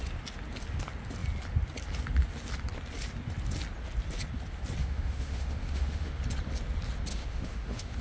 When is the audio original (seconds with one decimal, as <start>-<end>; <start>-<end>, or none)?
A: 0.0-4.8; 6.2-7.1